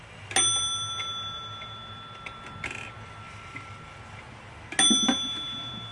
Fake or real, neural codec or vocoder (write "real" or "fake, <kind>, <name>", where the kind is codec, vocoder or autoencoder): real